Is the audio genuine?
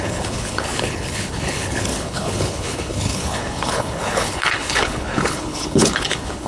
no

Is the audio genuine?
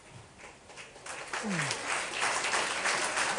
yes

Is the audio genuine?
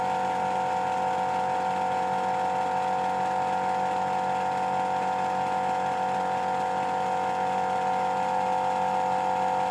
yes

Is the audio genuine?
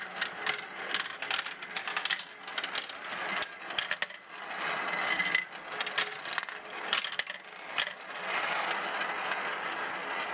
yes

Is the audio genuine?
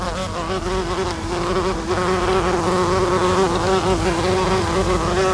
yes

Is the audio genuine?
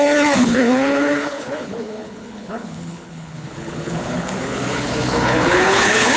no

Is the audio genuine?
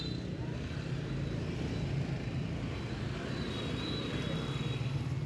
yes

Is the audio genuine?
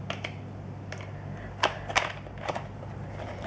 yes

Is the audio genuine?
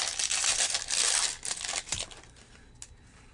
yes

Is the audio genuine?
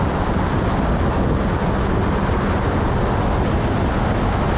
yes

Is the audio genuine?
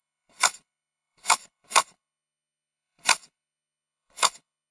no